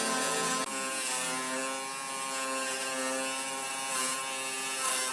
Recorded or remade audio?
recorded